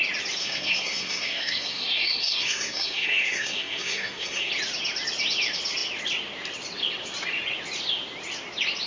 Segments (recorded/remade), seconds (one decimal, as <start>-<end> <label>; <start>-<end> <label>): 0.0-0.4 recorded; 0.4-4.5 remade; 4.5-8.9 recorded